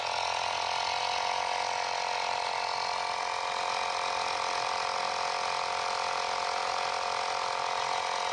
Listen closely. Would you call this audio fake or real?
real